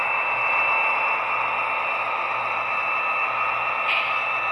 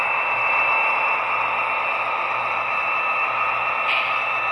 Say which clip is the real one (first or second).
first